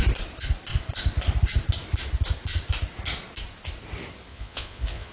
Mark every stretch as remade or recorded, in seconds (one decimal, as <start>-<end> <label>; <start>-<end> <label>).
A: 0.0-4.3 recorded; 4.3-5.1 remade